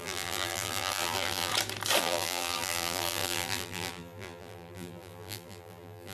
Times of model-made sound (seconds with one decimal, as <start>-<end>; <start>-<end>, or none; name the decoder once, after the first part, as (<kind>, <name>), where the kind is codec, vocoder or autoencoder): 0.0-1.5 (vocoder, BigVGAN v2); 2.0-6.1

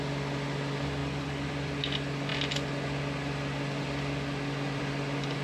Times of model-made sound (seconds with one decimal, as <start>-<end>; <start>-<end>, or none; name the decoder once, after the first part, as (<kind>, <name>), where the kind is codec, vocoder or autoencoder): 1.0-1.8 (vocoder, BigVGAN v2)

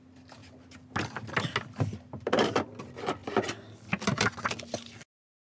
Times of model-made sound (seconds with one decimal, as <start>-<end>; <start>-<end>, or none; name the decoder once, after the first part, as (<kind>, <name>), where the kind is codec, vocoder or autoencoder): none

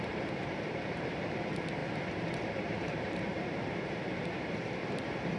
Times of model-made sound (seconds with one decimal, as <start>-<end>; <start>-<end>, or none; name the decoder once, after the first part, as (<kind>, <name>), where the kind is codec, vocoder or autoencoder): 0.0-1.8 (vocoder, BigVGAN v2); 2.5-5.4

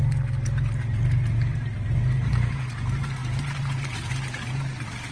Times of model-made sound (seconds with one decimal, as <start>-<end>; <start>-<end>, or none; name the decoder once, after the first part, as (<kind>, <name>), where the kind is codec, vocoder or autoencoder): 0.0-2.3 (vocoder, BigVGAN v2); 3.2-5.1

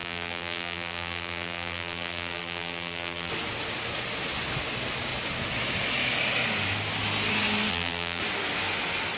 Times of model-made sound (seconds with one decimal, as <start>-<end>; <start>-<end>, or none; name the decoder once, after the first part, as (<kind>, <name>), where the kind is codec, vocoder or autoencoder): 0.0-3.3 (vocoder, BigVGAN v2); 7.7-8.2

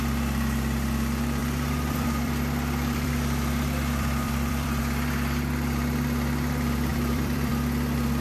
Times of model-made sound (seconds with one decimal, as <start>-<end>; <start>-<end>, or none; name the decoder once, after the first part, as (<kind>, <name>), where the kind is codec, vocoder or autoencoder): 1.4-4.8 (vocoder, BigVGAN v2); 6.9-7.5

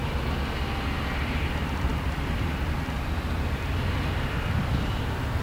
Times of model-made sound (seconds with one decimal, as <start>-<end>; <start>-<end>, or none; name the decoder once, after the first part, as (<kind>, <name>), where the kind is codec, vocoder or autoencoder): 1.5-1.9 (vocoder, BigVGAN v2); 5.0-5.4